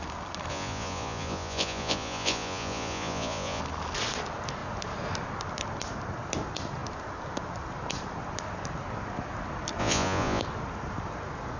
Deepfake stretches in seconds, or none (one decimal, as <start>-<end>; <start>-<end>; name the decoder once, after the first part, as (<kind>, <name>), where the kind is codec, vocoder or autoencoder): 0.5-3.6 (vocoder, Vocos); 9.8-10.4